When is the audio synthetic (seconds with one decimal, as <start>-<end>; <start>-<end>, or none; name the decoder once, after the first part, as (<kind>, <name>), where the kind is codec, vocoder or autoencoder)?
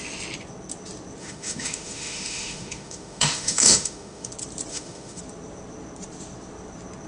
1.2-4.3 (autoencoder, DAC-VAE); 4.7-5.2